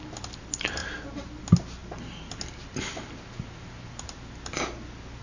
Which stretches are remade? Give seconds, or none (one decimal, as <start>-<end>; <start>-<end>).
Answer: none